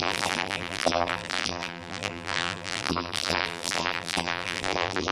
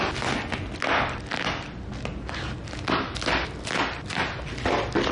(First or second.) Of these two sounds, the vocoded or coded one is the first